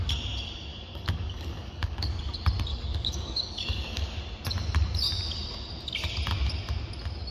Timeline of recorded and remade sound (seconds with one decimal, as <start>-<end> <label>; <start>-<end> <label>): 0.0-0.7 recorded; 0.7-2.2 remade; 2.2-2.7 recorded; 2.7-4.2 remade; 4.2-7.3 recorded